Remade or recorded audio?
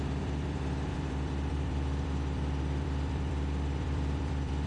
remade